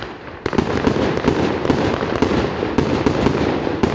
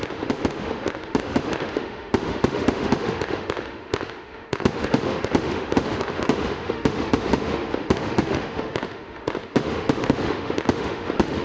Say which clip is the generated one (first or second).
second